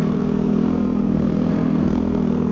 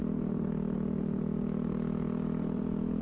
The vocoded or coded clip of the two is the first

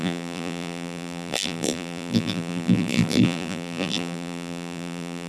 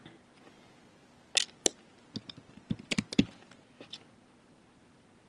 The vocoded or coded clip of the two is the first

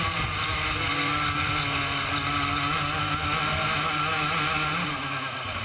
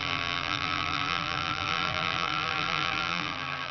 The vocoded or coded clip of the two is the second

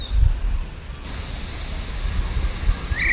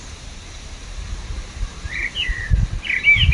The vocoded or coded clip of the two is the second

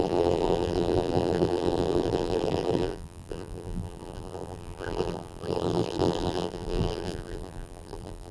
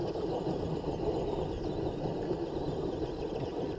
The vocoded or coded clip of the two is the first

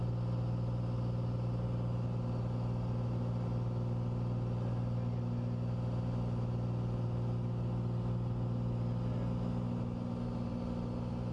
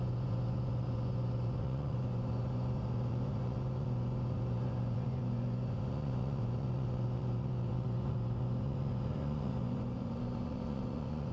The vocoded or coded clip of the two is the second